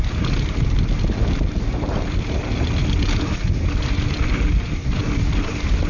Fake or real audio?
real